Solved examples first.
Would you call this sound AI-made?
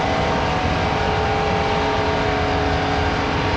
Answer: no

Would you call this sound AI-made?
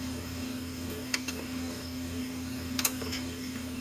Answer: yes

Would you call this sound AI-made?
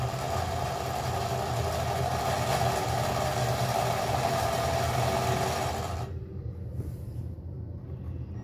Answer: no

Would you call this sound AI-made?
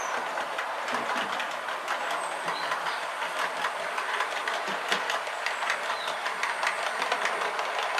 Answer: no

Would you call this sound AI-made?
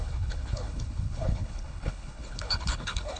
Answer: yes